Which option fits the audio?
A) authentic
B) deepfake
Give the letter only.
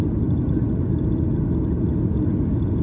A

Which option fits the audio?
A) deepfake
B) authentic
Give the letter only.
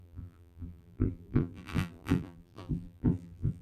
A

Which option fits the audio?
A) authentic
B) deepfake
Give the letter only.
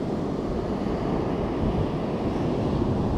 A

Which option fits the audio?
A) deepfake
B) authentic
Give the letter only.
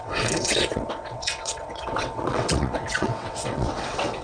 A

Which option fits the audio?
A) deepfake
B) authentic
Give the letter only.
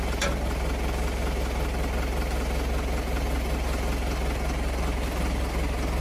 B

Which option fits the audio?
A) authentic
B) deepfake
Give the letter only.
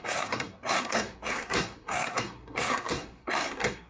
B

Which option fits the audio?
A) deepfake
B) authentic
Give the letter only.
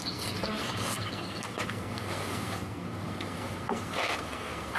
A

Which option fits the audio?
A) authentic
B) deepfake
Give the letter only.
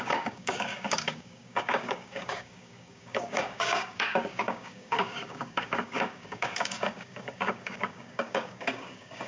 B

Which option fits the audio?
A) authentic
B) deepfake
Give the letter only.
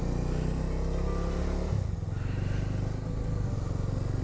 A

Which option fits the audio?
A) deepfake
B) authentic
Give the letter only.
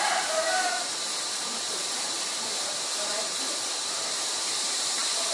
A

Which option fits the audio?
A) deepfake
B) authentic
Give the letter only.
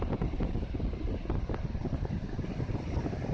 B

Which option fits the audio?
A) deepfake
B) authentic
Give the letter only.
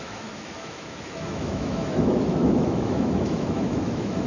A